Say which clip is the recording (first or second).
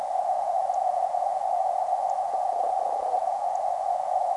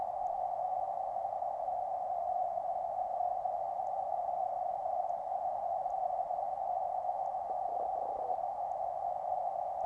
second